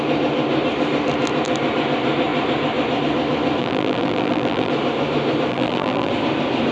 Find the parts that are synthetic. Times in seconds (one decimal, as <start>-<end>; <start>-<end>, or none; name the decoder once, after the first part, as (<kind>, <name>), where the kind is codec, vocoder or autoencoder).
3.6-4.7 (vocoder, BigVGAN v2); 5.5-6.1